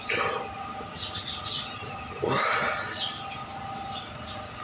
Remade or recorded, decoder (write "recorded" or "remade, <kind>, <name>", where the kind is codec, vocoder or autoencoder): recorded